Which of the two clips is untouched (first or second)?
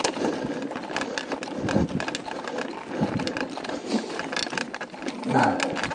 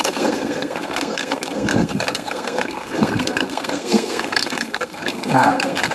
first